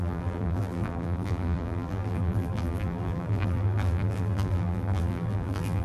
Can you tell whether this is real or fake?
fake